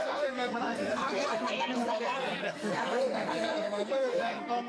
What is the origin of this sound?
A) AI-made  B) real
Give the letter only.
A